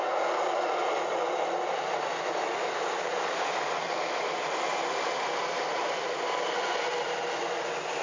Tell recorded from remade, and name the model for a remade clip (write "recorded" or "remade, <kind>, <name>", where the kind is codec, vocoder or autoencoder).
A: recorded